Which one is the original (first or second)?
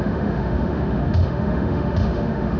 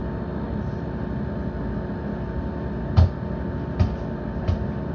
second